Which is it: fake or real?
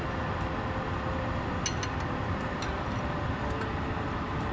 real